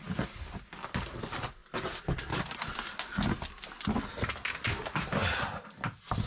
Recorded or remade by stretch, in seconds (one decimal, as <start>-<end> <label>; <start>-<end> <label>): 0.0-6.3 recorded